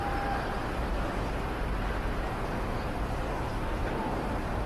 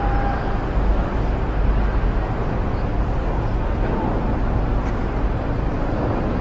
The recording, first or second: second